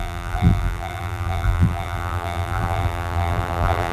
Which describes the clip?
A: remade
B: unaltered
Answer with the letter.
A